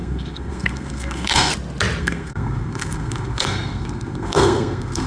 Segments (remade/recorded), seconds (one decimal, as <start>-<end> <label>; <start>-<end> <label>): 0.0-1.5 remade; 1.5-2.0 recorded; 2.0-5.1 remade